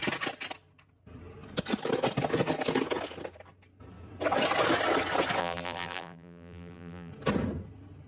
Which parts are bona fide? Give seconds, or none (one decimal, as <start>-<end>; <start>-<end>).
0.0-5.4; 7.1-8.1